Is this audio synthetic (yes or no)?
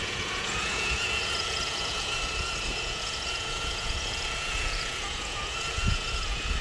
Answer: yes